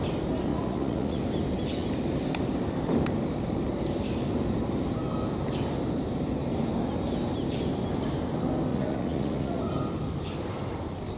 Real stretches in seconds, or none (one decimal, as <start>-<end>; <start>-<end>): 0.0-0.5; 1.2-8.7; 9.6-11.2